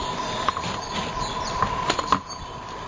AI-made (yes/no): no